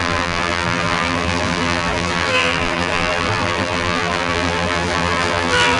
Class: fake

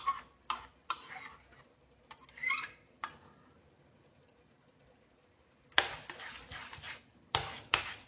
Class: fake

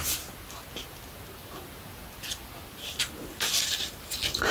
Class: real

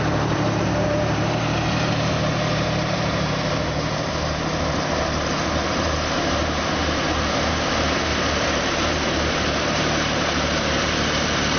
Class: fake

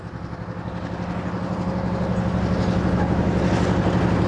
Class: real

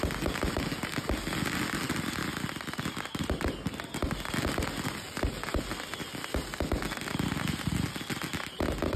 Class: real